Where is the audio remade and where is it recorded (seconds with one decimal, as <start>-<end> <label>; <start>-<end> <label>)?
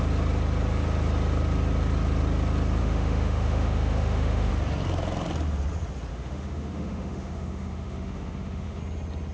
0.0-2.8 recorded; 2.8-4.5 remade; 4.5-6.1 recorded; 6.1-8.8 remade; 8.8-9.3 recorded